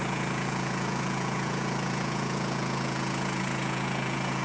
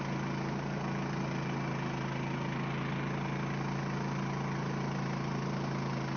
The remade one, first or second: first